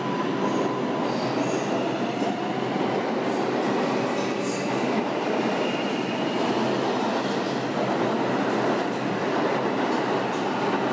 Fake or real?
real